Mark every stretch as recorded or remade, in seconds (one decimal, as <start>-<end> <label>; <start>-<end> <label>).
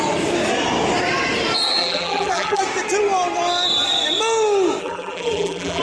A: 0.0-1.8 recorded; 1.8-2.6 remade; 2.6-4.8 recorded; 4.8-5.8 remade